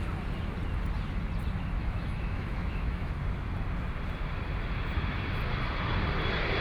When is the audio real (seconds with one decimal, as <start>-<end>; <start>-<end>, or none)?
0.0-1.8; 3.1-6.6